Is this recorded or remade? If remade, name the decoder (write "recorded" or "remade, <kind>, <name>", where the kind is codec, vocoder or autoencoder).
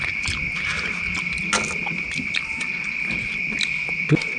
recorded